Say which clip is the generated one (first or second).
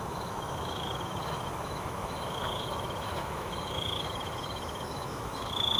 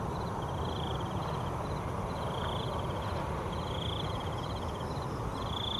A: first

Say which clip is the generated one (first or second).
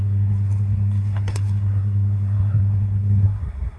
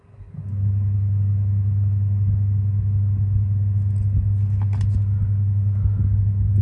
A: first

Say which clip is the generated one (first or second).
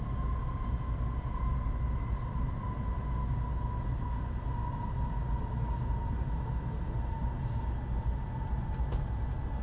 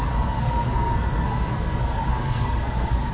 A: second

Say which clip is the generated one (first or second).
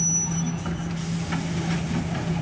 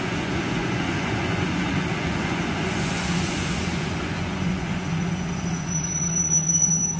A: second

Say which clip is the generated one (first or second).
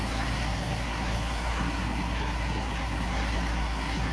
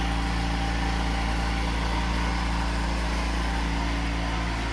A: first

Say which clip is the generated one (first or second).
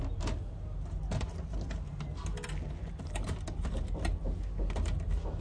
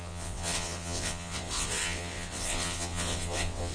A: second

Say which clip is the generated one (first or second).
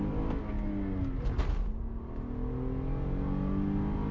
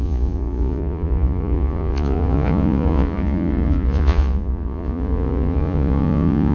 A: second